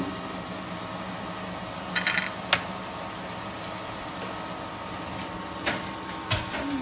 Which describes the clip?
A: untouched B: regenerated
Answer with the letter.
A